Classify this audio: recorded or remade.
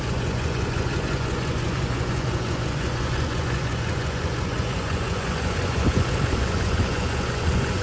remade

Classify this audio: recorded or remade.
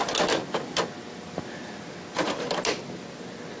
recorded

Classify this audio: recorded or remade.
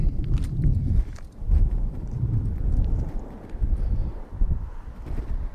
remade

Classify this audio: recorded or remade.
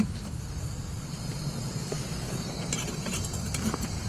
recorded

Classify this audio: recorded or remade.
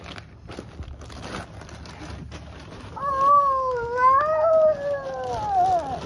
recorded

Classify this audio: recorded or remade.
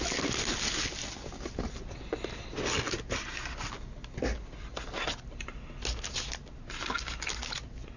recorded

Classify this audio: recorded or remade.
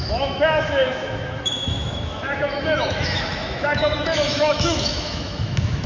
remade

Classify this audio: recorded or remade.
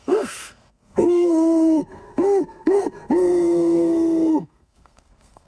remade